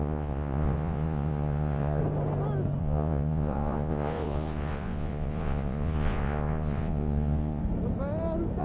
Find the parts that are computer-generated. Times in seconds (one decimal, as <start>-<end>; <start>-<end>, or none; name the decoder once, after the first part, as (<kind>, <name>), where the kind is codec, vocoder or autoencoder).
0.0-2.0 (vocoder, Vocos); 2.8-7.6